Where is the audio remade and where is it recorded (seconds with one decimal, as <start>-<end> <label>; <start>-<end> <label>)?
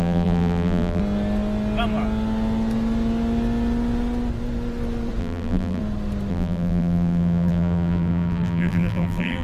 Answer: 0.0-1.0 remade; 1.0-5.2 recorded; 5.2-5.8 remade; 5.8-6.3 recorded; 6.3-9.4 remade